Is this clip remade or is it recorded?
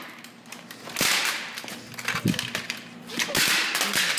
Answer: recorded